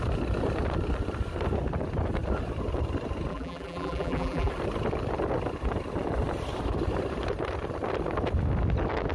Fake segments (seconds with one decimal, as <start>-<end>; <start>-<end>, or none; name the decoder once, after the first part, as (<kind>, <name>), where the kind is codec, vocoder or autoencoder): 3.3-4.5 (vocoder, BigVGAN v2)